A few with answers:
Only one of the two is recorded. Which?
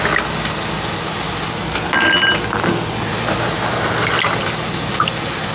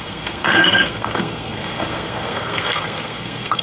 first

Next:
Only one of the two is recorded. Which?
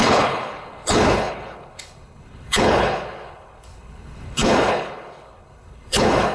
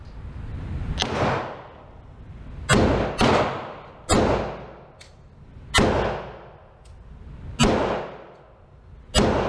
second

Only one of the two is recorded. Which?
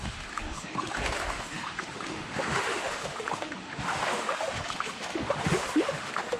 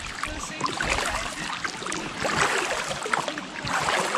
second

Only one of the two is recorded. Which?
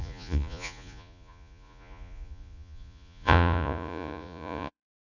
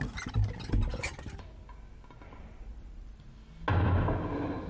second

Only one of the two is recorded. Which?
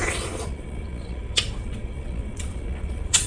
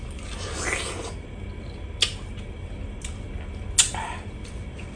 second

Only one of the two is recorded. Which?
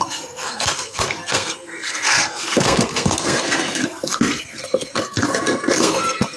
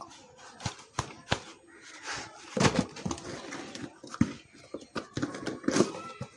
second